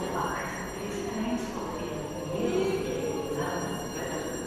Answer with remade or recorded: recorded